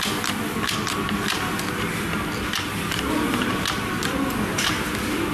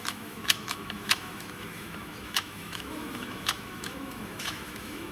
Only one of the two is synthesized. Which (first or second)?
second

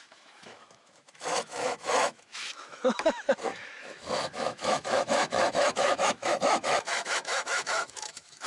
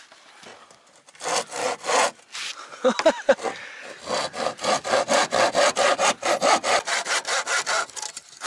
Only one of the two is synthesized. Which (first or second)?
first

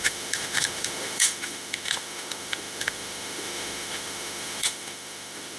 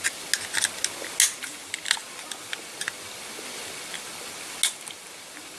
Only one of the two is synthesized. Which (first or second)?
first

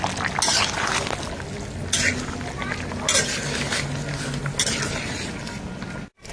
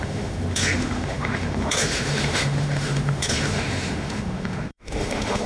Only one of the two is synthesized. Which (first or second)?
second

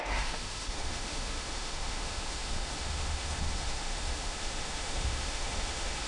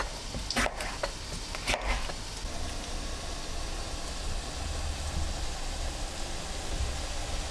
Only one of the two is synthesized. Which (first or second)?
first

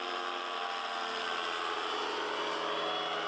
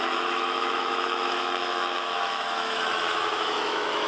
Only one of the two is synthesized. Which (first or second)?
second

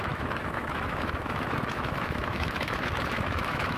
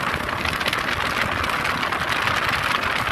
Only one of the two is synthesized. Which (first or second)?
first